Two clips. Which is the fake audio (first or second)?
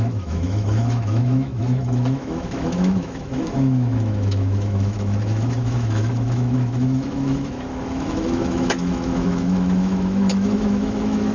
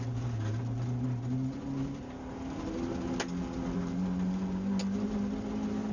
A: first